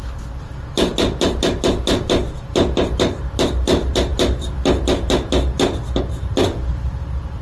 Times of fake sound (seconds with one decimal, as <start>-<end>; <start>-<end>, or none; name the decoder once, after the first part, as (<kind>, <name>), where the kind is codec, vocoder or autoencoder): none